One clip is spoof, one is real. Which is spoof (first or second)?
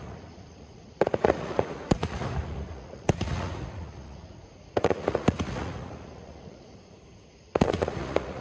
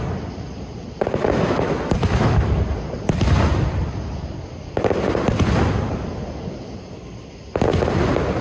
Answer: first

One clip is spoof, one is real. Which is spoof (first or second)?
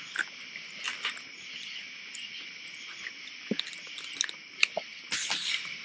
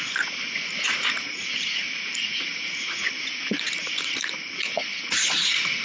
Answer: second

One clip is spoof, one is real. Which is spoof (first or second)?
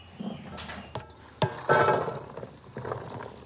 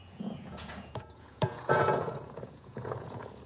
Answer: second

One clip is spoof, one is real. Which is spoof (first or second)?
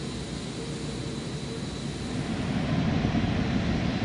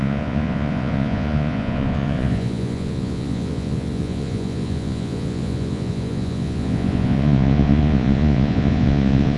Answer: second